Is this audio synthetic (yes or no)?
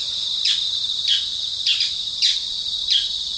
yes